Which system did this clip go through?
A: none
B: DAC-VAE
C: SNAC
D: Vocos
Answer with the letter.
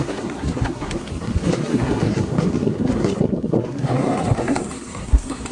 C